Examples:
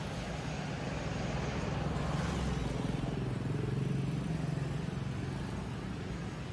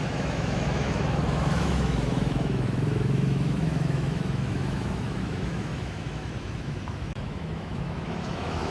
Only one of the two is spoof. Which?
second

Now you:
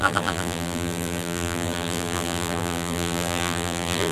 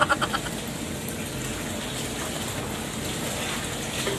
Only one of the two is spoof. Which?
first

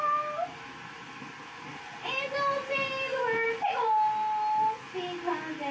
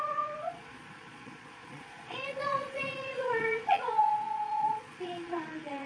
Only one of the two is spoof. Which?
second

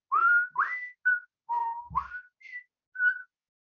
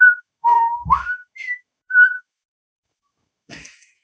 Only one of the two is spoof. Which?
second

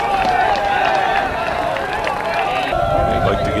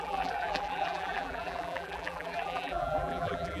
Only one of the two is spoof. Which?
second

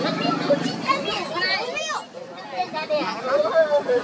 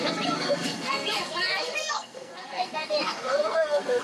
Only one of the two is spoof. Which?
second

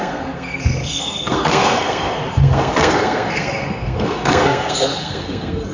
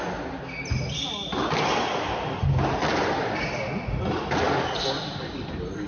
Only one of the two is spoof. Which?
first